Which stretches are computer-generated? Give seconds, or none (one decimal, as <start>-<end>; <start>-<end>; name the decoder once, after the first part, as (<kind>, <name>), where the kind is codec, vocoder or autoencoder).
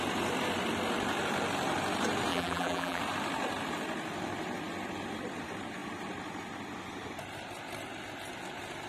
2.3-3.0 (vocoder, BigVGAN v2)